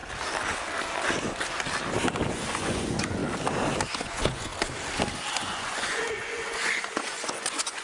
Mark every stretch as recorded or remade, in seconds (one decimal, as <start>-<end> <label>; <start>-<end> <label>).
0.0-2.3 recorded; 2.3-3.2 remade; 3.2-3.9 recorded; 3.9-4.5 remade; 4.5-5.3 recorded; 5.3-7.8 remade